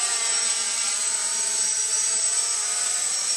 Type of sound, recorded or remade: remade